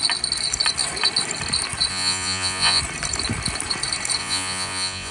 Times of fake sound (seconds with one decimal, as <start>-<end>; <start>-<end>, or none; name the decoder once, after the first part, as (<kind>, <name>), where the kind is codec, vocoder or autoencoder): 1.9-2.8 (vocoder, Vocos); 4.2-5.1